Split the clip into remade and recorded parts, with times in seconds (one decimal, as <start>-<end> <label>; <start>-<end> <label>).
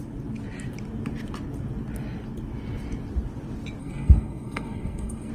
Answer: 0.0-3.8 recorded; 3.8-5.3 remade